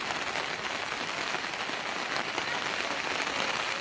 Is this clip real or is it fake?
real